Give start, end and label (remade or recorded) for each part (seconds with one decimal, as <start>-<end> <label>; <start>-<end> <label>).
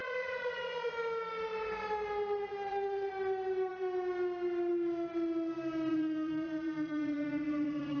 0.0-0.9 remade; 0.9-2.4 recorded; 2.4-3.1 remade; 3.1-5.9 recorded; 5.9-8.0 remade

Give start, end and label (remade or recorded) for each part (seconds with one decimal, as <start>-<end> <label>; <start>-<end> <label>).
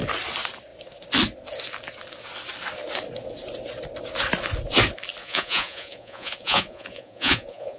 0.0-5.2 recorded; 5.2-7.8 remade